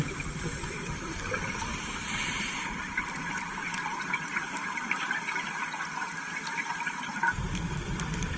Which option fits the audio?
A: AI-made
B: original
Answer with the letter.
A